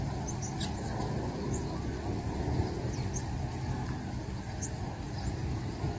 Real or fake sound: real